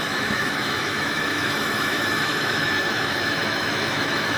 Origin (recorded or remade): remade